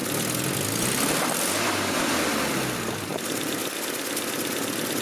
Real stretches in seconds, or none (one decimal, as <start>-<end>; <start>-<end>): 0.0-3.0; 3.6-5.0